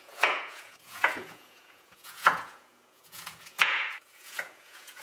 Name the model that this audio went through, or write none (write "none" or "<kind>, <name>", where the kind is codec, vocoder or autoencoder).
vocoder, Vocos